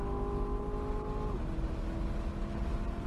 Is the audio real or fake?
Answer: real